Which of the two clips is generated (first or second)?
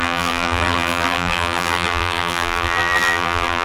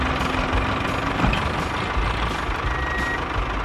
first